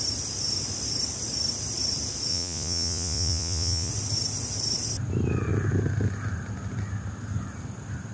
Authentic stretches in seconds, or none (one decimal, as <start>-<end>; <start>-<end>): 0.0-2.3; 3.9-8.1